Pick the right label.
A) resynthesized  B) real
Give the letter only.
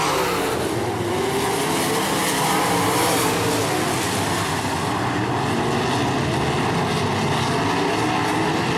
B